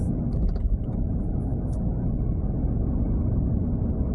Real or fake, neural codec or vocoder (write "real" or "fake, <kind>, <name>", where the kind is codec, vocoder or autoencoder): real